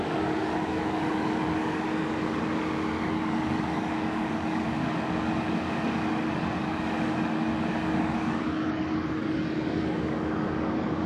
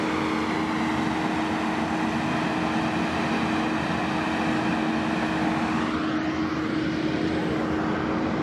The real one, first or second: second